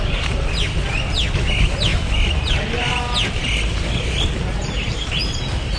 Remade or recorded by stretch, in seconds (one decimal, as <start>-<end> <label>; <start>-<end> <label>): 0.0-5.8 recorded